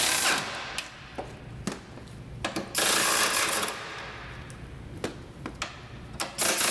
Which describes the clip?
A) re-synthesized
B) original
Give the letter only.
B